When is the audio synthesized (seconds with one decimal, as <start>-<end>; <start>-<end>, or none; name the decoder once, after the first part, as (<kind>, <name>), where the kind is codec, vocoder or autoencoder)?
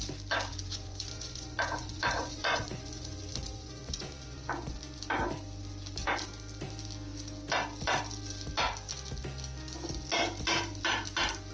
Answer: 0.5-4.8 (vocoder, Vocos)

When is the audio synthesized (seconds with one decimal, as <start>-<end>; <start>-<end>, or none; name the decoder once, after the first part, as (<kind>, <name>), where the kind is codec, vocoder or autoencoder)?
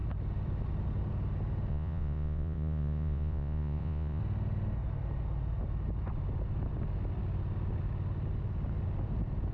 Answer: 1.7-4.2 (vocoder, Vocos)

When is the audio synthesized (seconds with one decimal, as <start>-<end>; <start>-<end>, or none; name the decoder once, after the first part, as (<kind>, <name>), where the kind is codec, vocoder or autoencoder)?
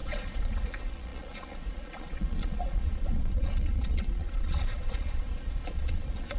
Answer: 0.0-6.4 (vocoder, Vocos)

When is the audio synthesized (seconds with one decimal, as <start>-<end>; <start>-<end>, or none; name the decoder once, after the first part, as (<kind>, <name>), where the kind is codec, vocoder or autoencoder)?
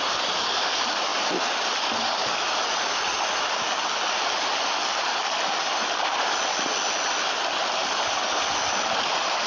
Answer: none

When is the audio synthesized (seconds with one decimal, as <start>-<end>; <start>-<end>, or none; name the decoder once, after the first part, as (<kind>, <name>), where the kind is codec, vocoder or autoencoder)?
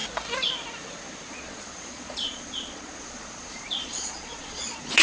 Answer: 1.3-5.0 (vocoder, Vocos)